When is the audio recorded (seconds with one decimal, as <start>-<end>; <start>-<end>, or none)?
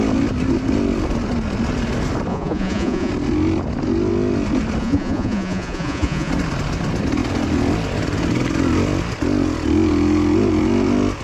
0.0-2.3; 3.1-4.8; 6.3-11.2